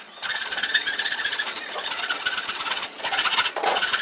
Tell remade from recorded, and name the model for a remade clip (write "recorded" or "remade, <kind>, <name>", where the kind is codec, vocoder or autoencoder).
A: remade, vocoder, Vocos